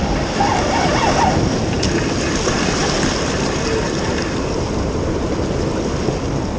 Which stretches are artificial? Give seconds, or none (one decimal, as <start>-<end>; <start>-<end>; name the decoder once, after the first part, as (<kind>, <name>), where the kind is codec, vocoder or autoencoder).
none